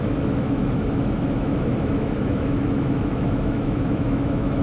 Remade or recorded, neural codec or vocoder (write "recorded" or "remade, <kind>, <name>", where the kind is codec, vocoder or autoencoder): remade, autoencoder, DAC-VAE